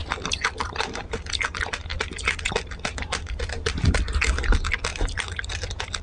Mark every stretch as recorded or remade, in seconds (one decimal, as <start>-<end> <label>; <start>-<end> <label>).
0.0-1.0 remade; 1.0-4.9 recorded; 4.9-6.0 remade